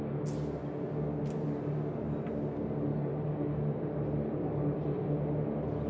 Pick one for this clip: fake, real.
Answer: real